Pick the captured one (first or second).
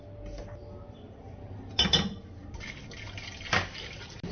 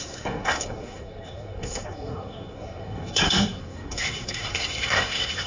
first